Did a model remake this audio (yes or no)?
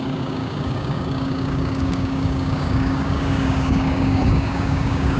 yes